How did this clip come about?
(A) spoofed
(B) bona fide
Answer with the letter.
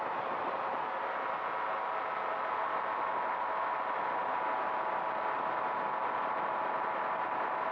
B